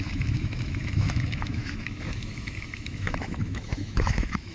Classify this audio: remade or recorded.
remade